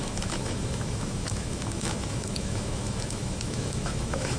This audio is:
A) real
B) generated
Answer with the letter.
B